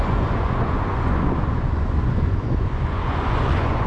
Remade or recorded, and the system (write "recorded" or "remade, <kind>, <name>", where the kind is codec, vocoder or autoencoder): remade, vocoder, Vocos